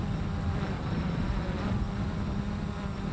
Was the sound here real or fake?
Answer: real